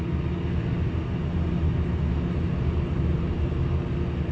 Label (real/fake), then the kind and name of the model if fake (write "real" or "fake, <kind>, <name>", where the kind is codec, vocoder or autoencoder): real